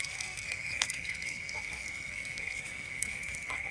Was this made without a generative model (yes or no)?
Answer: no